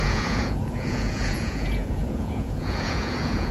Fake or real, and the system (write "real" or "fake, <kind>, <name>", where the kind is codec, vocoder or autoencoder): fake, vocoder, Vocos